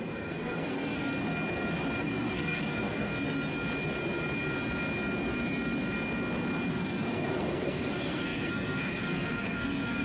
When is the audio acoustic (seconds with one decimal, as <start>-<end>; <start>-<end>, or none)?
1.1-2.0; 3.1-6.7